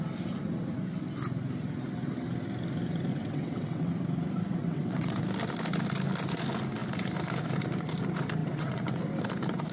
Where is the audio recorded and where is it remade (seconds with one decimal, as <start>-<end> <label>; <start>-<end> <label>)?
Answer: 0.0-3.1 recorded; 3.1-3.9 remade; 3.9-4.6 recorded; 4.6-5.2 remade; 5.2-8.4 recorded; 8.4-9.0 remade; 9.0-9.7 recorded